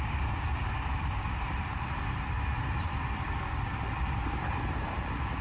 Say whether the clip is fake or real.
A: fake